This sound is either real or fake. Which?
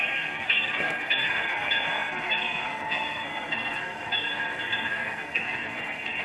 fake